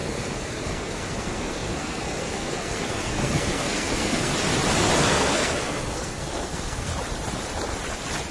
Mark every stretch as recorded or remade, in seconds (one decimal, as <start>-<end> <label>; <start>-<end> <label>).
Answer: 0.0-4.3 remade; 4.3-5.0 recorded; 5.0-6.9 remade; 6.9-8.3 recorded